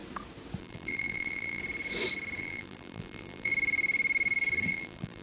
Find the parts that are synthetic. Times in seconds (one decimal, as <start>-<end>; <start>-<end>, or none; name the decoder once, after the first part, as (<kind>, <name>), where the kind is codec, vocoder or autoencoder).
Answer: 0.6-1.6 (vocoder, BigVGAN v2); 2.4-3.5; 4.7-5.2